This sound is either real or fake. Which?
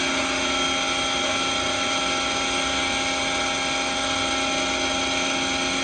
real